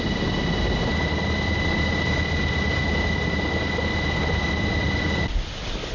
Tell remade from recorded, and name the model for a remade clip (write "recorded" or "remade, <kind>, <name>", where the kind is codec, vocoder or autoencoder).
recorded